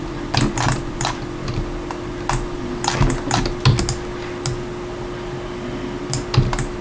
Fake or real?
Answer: real